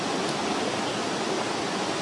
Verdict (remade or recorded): recorded